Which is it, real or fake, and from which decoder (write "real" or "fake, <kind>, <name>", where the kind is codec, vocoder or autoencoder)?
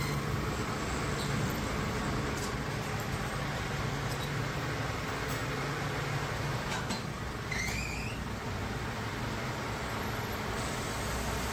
real